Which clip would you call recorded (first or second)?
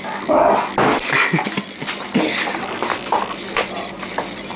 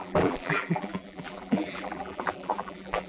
first